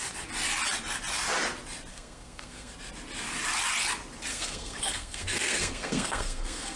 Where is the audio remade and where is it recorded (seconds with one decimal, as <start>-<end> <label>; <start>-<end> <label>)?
0.0-1.9 recorded; 1.9-2.7 remade; 2.7-4.3 recorded; 4.3-6.8 remade